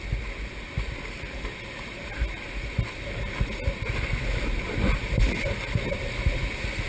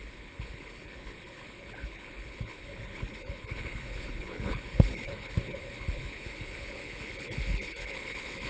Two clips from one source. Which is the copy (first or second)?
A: second